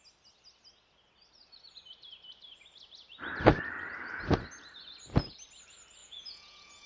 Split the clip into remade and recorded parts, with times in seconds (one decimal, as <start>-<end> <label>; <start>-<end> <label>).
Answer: 0.0-6.0 recorded; 6.0-6.9 remade